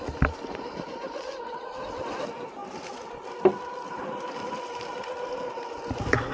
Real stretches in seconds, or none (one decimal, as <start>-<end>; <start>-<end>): 0.0-6.3